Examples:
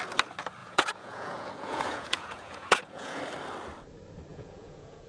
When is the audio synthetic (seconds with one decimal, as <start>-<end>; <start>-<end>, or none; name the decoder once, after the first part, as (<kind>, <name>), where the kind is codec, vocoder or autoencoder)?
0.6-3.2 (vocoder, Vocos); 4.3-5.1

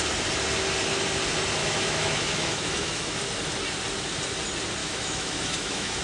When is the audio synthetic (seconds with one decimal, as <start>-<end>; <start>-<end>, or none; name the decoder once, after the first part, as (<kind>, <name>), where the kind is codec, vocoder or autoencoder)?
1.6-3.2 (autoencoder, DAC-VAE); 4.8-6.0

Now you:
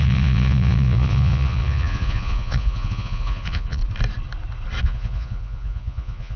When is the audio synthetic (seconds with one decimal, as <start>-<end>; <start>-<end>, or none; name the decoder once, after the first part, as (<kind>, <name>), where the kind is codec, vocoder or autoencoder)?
0.0-3.8 (vocoder, Vocos); 4.8-6.4